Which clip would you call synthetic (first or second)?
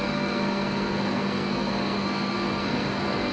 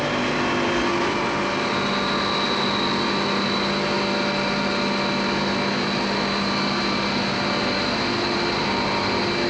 first